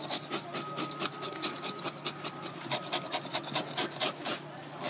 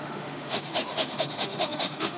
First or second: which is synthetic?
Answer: second